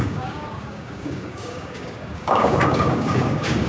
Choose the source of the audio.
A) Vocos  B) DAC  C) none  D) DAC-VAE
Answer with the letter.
B